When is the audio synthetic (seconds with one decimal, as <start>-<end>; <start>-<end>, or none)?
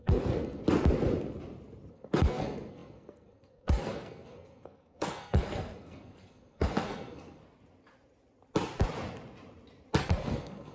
0.0-0.6; 1.9-7.4; 10.0-10.7